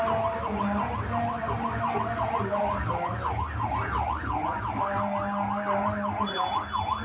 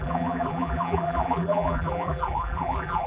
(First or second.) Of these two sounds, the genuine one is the first